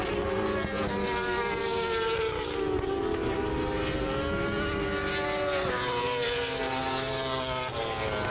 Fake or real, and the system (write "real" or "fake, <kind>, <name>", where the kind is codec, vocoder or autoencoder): real